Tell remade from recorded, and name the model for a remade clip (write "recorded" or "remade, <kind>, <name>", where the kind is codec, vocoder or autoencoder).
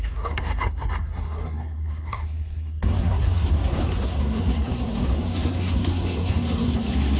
remade, codec, SNAC